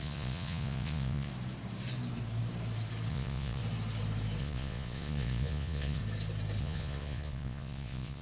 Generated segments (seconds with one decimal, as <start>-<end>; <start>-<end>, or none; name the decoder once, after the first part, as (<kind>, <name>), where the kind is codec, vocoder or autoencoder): 0.0-1.3 (vocoder, Vocos); 3.1-3.6; 4.4-6.0; 6.6-8.2